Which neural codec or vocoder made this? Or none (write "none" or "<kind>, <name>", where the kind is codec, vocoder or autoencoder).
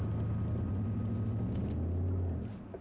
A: none